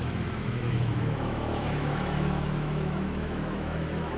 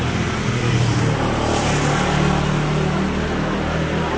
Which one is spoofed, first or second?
first